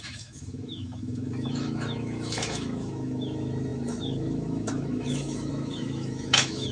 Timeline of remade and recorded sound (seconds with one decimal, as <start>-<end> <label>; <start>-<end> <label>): 0.0-6.7 remade